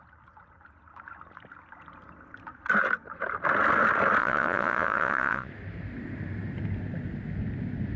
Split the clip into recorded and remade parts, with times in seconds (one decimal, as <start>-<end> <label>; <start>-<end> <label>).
0.0-4.2 recorded; 4.2-5.5 remade; 5.5-8.0 recorded